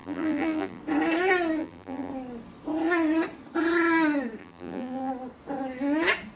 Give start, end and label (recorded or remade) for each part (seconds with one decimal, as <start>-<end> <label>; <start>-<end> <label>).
0.0-0.8 remade; 0.8-1.6 recorded; 1.6-2.1 remade; 2.1-4.4 recorded; 4.4-5.1 remade; 5.1-6.4 recorded